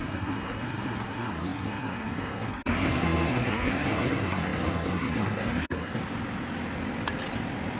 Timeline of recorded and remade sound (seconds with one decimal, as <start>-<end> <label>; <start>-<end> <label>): 0.0-6.0 remade; 6.0-7.8 recorded